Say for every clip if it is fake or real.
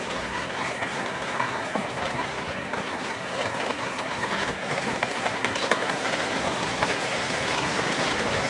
fake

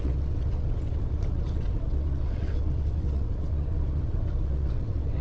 fake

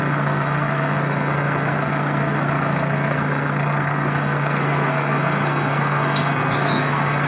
fake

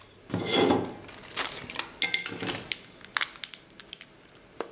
real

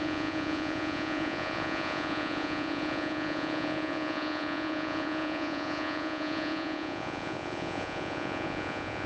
fake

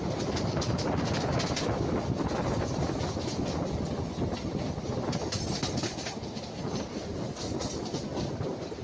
real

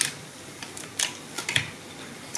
real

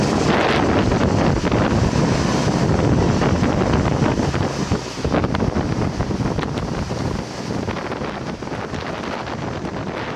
real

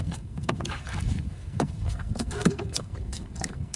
fake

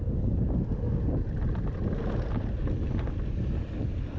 real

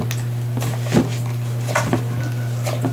real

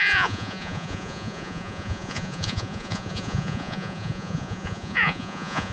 fake